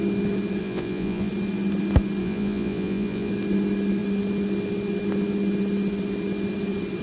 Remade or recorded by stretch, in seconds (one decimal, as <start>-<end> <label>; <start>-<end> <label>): 0.0-0.6 recorded; 0.6-1.3 remade; 1.3-2.2 recorded; 2.2-3.3 remade; 3.3-7.0 recorded